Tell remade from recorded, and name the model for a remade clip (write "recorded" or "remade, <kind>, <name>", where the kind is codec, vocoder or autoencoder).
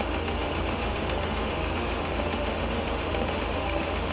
remade, autoencoder, DAC-VAE